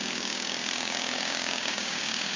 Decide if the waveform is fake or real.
fake